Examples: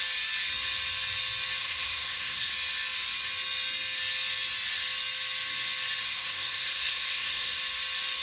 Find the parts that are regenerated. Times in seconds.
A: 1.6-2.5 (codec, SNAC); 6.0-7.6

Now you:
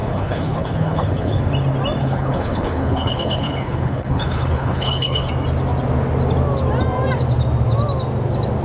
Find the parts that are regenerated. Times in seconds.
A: 0.0-1.4 (codec, HILCodec); 2.0-5.3

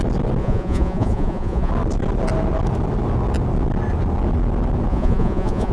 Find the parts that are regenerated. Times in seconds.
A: 0.4-1.7 (vocoder, Vocos); 4.9-5.7

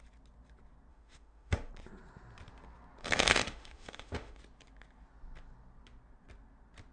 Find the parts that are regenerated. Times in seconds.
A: 0.9-1.7 (autoencoder, DAC-VAE); 3.0-4.4

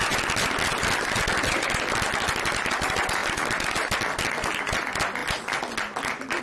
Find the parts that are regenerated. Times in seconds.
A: none

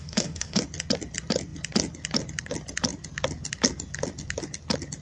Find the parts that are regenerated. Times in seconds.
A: 0.0-0.6 (autoencoder, DAC-VAE)